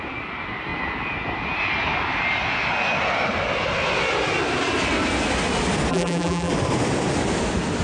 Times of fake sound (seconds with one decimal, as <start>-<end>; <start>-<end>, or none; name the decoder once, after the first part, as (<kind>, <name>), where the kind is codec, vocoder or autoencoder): 5.9-6.5 (vocoder, BigVGAN v2)